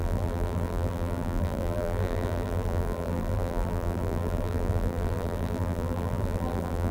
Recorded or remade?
remade